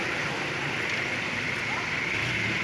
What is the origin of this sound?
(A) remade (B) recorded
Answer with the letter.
B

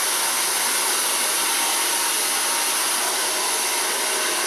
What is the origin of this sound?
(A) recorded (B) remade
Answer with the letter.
A